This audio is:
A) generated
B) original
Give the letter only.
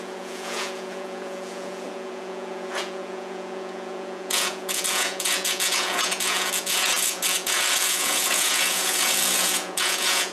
A